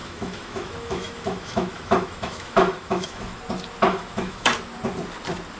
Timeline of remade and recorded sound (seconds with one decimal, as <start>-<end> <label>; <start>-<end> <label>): 0.0-3.4 remade; 3.4-3.9 recorded; 3.9-4.5 remade; 4.5-5.6 recorded